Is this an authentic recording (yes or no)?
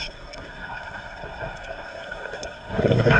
no